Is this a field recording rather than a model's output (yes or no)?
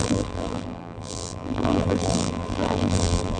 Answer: no